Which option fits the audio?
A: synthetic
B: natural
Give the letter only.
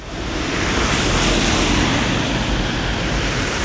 A